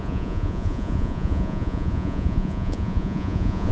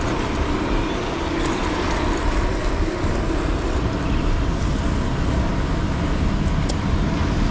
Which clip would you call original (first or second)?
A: second